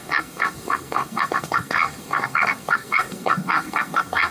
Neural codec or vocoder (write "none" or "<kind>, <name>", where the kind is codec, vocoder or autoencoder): codec, SNAC